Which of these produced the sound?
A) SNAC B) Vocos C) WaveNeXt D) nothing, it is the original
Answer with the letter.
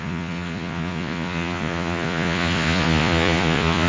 B